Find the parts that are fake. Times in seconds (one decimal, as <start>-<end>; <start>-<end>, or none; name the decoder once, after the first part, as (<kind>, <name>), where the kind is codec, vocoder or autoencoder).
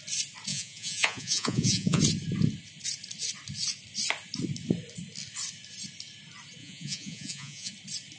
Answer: 0.5-2.0 (vocoder, Vocos); 6.6-7.7